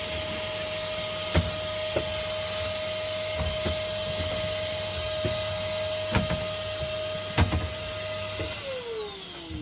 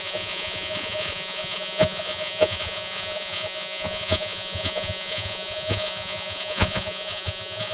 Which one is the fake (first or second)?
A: second